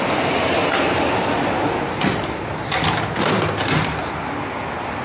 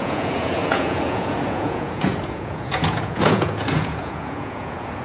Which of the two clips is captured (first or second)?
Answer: first